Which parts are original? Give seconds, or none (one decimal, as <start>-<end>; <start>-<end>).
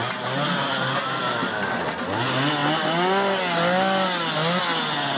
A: 0.0-5.2